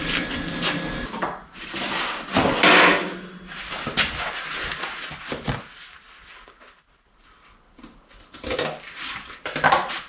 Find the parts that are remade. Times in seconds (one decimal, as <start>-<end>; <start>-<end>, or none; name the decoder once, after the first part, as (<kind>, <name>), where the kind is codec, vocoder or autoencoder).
none